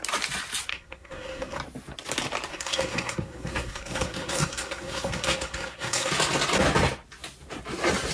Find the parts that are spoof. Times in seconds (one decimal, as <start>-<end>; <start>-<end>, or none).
0.7-1.6; 2.5-6.1